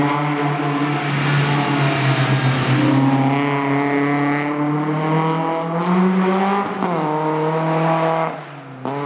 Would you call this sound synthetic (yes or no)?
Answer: no